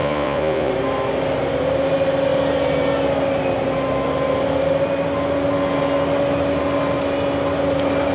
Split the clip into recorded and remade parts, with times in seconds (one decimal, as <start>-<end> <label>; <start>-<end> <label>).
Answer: 0.0-0.7 remade; 0.7-8.1 recorded